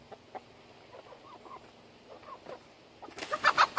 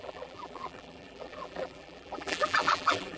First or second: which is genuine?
first